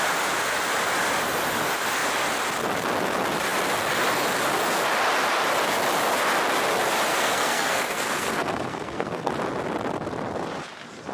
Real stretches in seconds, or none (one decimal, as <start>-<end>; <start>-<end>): 0.0-7.1; 9.3-11.1